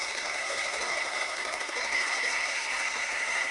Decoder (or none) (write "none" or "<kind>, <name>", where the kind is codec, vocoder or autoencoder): codec, SNAC